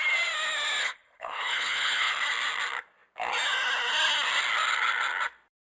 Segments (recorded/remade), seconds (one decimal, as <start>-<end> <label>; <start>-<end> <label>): 0.0-0.8 recorded; 0.8-2.1 remade; 2.1-5.6 recorded